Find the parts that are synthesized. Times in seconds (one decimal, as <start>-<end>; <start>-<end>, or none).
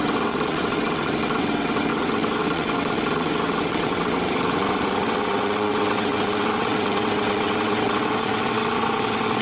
0.0-9.4